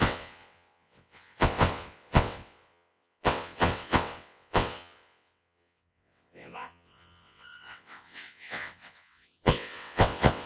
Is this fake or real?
fake